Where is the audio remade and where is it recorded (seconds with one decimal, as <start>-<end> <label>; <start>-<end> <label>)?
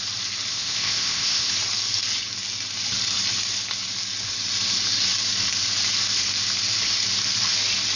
0.0-0.5 recorded; 0.5-1.5 remade; 1.5-8.0 recorded